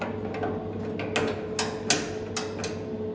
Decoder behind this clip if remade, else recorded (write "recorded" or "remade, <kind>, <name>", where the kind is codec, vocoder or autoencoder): recorded